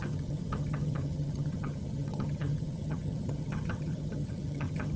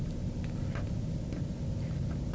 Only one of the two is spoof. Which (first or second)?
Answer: first